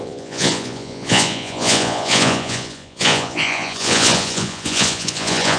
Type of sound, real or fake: fake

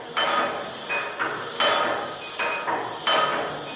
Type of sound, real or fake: real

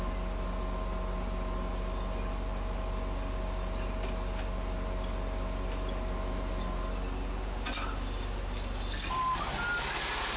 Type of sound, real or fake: real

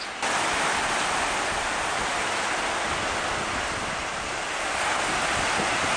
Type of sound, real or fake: real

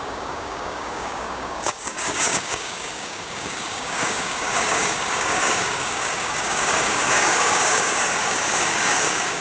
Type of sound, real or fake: fake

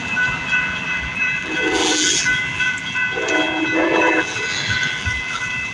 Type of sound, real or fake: fake